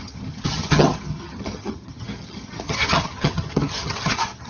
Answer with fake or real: fake